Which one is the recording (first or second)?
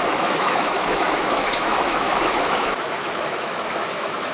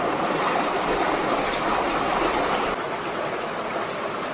second